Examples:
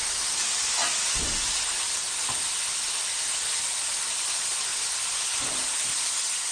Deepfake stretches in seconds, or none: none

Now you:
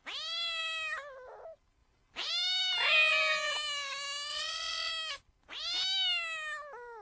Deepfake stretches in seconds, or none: 4.3-4.9 (vocoder, WaveNeXt)

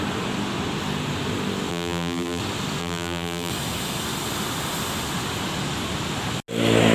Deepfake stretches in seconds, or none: 1.7-2.4 (vocoder, BigVGAN v2); 2.8-3.5